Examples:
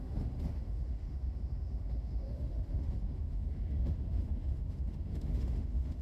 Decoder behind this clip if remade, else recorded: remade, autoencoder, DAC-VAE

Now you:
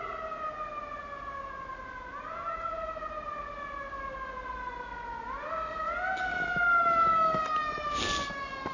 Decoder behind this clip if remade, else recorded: recorded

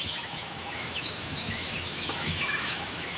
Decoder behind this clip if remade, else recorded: remade, autoencoder, DAC-VAE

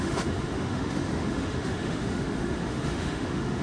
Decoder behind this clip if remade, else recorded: remade, autoencoder, DAC-VAE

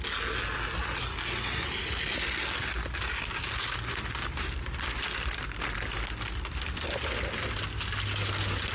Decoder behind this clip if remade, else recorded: recorded